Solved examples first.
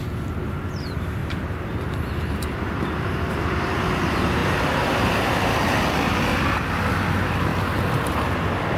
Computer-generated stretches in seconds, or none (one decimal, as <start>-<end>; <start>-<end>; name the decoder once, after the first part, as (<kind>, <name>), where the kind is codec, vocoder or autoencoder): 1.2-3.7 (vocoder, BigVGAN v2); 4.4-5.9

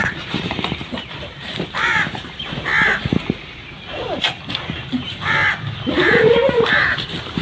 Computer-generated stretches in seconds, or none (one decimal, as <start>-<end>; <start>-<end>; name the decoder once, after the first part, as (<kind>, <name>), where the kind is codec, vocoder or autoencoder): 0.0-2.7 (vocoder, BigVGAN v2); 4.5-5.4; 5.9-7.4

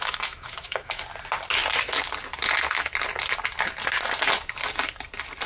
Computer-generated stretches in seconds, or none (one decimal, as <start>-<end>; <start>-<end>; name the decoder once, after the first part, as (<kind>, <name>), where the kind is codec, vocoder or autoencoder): 0.0-1.0 (autoencoder, DAC-VAE)

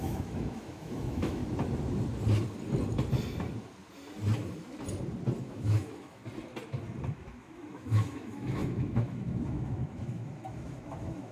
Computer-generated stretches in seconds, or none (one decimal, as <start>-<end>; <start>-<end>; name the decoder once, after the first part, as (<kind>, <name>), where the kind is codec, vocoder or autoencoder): 0.0-1.4 (autoencoder, DAC-VAE); 5.4-6.2; 7.1-11.3

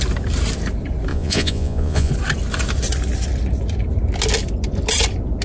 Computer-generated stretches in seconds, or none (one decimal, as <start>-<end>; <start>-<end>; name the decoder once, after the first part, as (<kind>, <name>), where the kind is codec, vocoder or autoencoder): 1.1-2.1 (vocoder, Vocos)